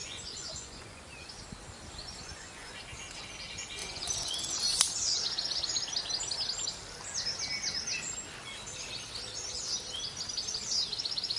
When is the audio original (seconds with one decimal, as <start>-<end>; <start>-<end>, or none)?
1.4-2.0; 2.8-3.8; 4.8-11.4